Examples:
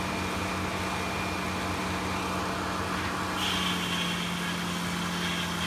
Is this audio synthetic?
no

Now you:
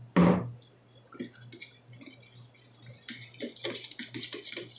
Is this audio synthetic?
no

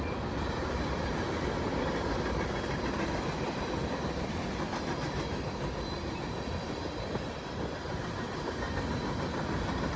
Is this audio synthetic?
no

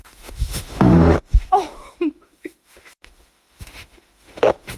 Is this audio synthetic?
yes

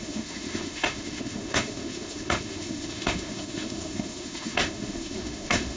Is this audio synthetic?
yes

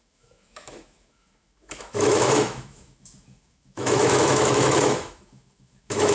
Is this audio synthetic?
yes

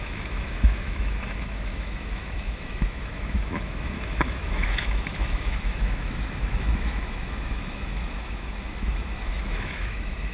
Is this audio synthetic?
yes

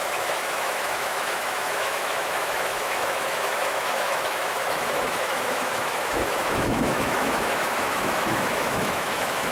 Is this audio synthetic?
yes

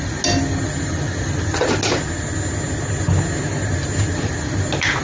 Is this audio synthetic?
no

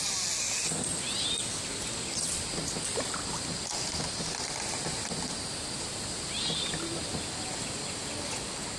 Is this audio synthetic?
no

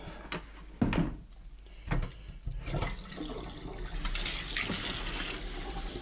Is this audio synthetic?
no